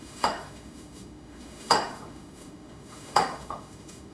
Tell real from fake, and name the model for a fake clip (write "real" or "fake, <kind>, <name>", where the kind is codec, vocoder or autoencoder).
fake, autoencoder, DAC-VAE